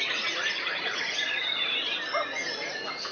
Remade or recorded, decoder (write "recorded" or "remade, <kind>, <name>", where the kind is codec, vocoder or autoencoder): recorded